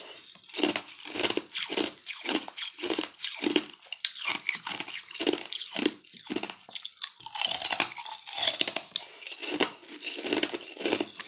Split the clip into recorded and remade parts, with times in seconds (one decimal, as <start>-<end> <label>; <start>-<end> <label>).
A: 0.0-2.0 recorded; 2.0-3.0 remade; 3.0-11.3 recorded